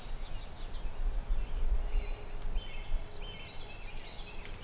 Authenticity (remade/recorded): recorded